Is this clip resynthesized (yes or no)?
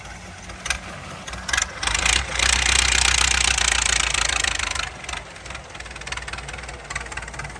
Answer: no